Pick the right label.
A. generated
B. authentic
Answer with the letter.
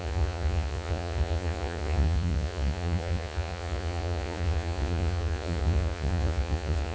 A